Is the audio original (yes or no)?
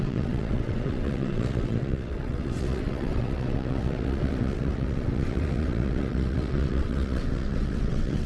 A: no